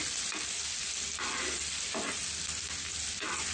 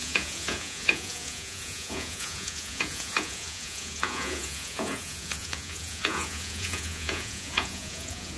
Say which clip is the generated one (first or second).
second